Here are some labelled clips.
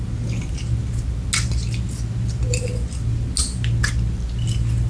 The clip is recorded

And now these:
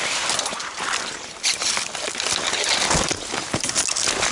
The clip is recorded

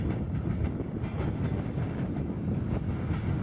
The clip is recorded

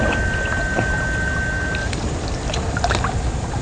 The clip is recorded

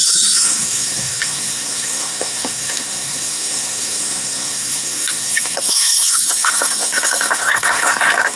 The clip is remade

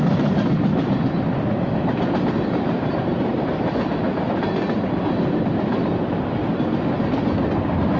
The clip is recorded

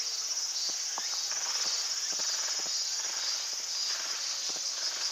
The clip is recorded